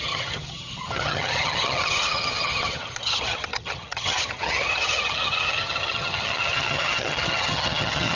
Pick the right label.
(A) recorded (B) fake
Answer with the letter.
B